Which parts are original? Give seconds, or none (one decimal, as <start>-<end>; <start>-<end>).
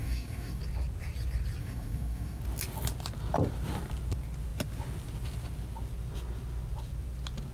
0.6-1.6; 2.4-7.5